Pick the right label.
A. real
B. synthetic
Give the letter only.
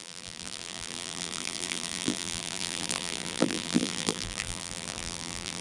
B